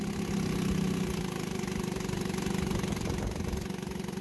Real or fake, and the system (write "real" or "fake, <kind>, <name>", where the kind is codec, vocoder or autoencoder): real